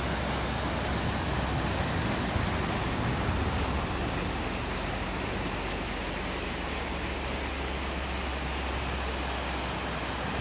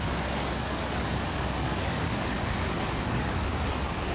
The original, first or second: first